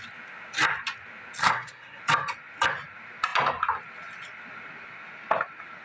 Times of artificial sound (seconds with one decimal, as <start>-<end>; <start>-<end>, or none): 1.4-2.0